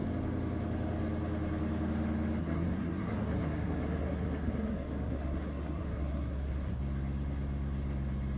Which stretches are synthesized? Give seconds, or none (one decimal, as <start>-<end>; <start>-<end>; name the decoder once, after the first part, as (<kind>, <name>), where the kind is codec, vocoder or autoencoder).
2.4-6.8 (codec, SNAC)